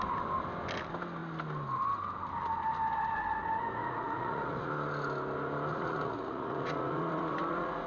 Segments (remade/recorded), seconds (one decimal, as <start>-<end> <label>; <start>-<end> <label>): 0.0-3.8 recorded; 3.8-4.7 remade; 4.7-5.7 recorded; 5.7-7.9 remade